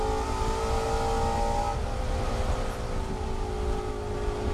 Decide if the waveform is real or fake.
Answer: real